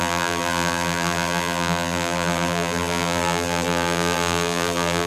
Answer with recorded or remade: remade